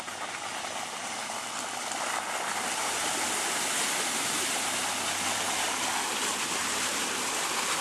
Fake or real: real